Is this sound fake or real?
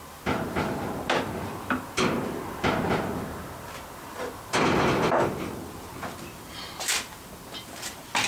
fake